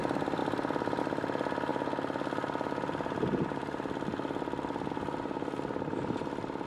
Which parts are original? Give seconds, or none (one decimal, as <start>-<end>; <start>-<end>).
0.0-6.7